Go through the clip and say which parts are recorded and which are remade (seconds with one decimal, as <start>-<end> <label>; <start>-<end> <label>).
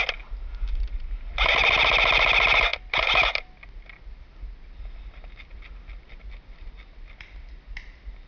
0.0-8.3 recorded